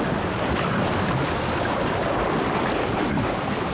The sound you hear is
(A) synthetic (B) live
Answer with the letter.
B